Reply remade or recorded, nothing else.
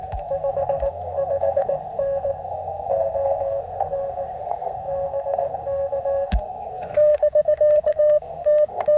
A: remade